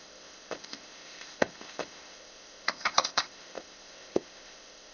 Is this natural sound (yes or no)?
no